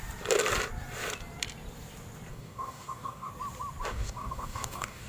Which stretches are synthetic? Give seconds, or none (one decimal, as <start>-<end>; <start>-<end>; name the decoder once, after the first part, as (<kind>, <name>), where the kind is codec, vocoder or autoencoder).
2.3-3.3 (codec, DAC); 3.9-5.1